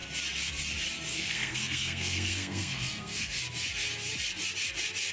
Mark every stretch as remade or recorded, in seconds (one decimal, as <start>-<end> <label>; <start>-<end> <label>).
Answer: 0.0-1.1 recorded; 1.1-3.4 remade; 3.4-5.1 recorded